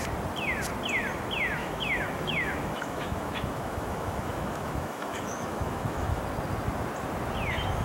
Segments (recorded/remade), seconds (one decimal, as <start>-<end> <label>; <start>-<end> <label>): 0.0-1.6 recorded; 1.6-6.2 remade; 6.2-7.8 recorded